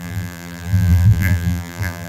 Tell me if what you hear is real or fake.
fake